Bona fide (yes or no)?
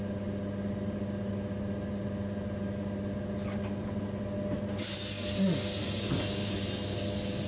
yes